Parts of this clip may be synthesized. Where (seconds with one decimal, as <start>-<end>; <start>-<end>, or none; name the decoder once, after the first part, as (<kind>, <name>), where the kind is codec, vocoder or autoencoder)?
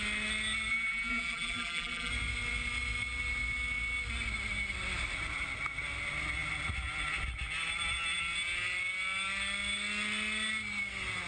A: 0.7-2.1 (vocoder, BigVGAN v2)